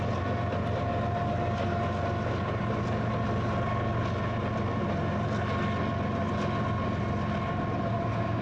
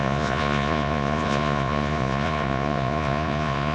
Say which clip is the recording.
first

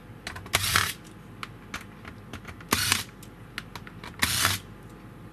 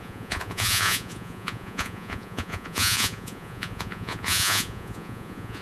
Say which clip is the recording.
first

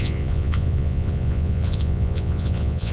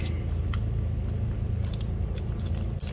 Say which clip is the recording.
second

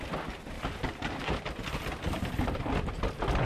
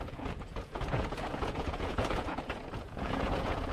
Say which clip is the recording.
first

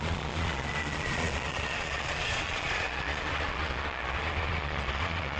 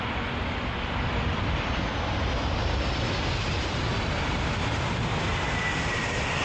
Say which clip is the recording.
second